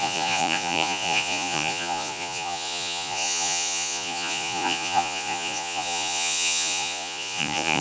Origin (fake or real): fake